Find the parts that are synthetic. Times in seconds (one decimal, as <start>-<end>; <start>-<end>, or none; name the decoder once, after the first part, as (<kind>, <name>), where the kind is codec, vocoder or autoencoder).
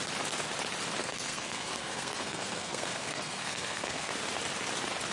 1.0-4.1 (codec, SNAC)